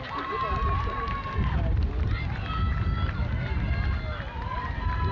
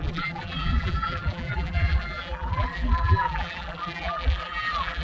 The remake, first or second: second